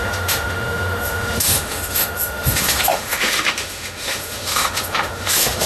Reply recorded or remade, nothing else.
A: remade